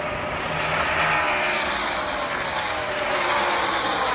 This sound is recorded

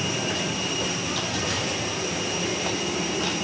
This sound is recorded